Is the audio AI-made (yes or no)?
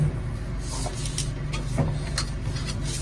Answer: no